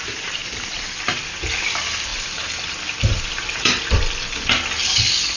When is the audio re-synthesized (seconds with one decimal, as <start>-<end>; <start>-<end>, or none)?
none